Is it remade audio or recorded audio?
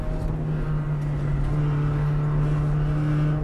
recorded